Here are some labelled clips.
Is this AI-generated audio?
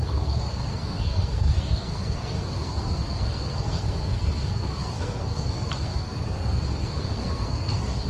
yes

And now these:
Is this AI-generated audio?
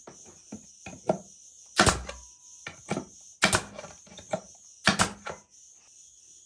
no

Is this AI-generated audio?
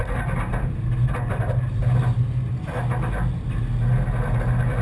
no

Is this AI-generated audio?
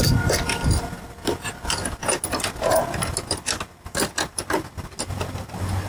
no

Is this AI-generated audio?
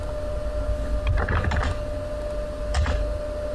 no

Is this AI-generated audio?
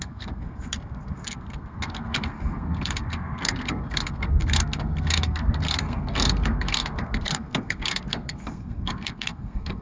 yes